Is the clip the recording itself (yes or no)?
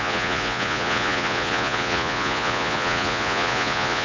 no